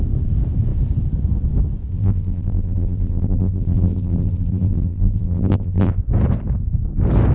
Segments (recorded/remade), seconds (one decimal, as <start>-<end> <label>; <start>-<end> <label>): 0.0-1.9 recorded; 1.9-6.0 remade; 6.0-7.3 recorded